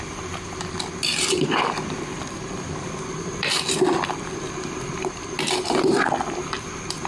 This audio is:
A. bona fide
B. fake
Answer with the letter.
B